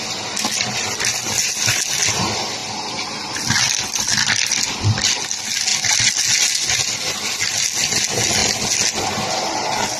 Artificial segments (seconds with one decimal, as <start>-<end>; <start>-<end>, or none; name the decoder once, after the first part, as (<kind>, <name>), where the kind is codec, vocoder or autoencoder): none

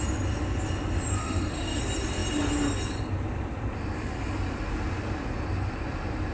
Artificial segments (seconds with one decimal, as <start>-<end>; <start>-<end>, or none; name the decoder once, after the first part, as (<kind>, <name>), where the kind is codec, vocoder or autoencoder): 1.2-1.8 (autoencoder, DAC-VAE)

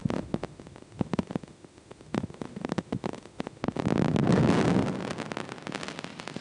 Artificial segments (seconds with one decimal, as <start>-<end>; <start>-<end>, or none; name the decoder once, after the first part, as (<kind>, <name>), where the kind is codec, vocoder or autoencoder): 0.0-3.8 (autoencoder, DAC-VAE)

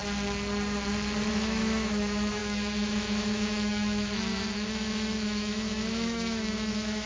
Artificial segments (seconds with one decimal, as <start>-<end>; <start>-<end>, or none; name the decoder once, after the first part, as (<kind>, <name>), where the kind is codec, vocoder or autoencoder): 1.3-7.1 (autoencoder, DAC-VAE)